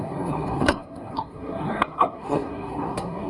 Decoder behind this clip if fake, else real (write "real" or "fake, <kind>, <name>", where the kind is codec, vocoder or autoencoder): fake, codec, SNAC